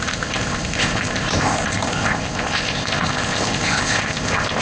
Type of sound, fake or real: fake